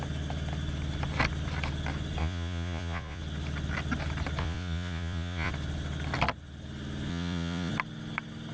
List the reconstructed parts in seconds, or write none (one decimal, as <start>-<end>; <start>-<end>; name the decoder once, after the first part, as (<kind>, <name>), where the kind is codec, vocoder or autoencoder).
2.2-3.2 (vocoder, Vocos); 4.4-5.5; 7.1-7.7